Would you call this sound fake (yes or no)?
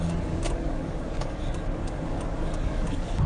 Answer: yes